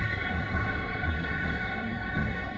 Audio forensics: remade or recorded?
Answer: remade